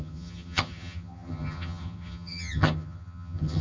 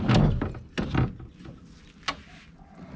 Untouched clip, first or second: second